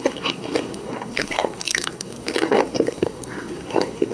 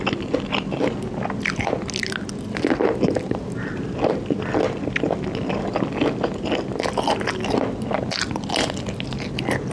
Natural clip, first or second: second